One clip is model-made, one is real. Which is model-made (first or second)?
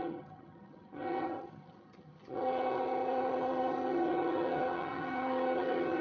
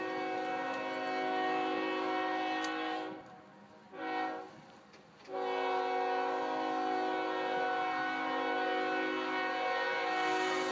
first